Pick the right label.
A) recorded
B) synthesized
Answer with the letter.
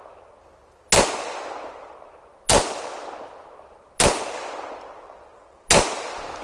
A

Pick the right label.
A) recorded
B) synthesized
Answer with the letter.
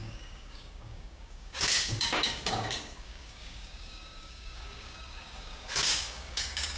B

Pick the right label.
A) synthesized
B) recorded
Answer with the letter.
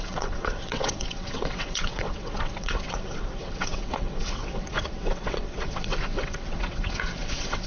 A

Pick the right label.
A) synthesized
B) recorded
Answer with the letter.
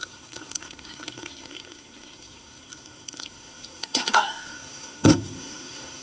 A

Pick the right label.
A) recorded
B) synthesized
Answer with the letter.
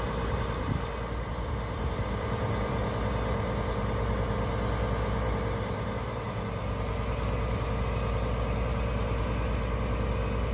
A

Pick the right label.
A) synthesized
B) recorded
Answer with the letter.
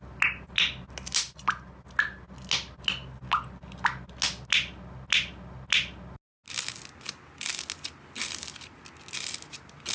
B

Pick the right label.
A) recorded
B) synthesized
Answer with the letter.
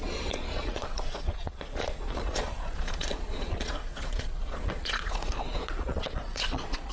B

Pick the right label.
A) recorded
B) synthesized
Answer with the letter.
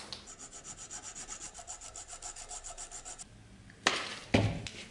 A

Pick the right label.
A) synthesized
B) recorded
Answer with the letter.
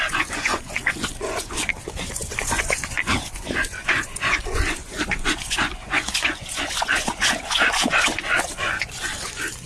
A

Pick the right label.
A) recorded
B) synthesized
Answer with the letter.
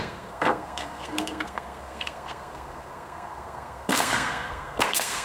B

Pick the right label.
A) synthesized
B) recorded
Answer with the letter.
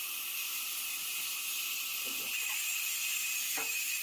B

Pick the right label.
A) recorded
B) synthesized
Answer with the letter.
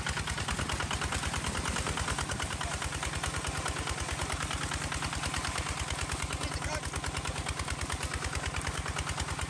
A